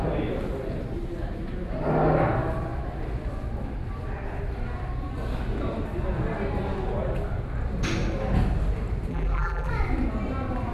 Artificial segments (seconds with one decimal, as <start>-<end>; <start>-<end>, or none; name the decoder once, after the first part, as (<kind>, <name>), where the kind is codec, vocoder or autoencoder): 9.1-9.7 (vocoder, BigVGAN v2)